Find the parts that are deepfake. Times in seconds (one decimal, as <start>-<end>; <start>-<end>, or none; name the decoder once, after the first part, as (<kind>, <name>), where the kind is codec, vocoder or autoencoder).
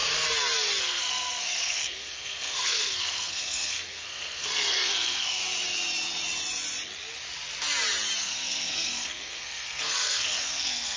0.8-5.4 (codec, SNAC); 8.2-11.0